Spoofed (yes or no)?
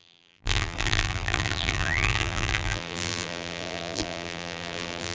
yes